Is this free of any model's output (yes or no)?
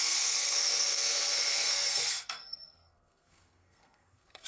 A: no